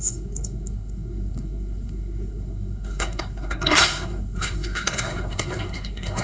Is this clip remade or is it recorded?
remade